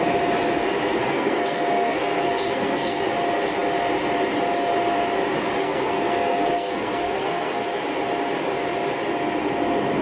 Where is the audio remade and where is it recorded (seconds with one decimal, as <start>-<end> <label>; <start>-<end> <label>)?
0.0-1.0 recorded; 1.0-3.0 remade; 3.0-5.6 recorded; 5.6-7.6 remade; 7.6-10.0 recorded